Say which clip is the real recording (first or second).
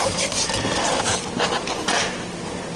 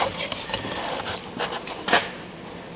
first